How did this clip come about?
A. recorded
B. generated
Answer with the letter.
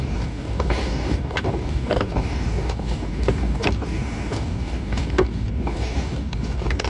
B